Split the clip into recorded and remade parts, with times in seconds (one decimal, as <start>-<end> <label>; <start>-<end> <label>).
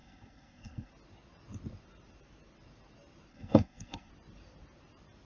0.0-0.9 remade; 0.9-3.3 recorded; 3.3-4.1 remade; 4.1-5.2 recorded